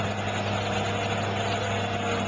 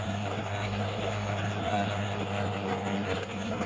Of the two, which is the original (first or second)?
first